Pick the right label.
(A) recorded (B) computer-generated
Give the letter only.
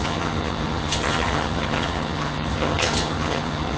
B